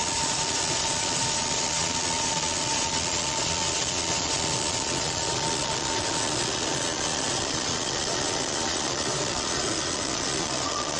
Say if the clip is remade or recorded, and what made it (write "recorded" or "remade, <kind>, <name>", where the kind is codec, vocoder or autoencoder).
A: remade, vocoder, Vocos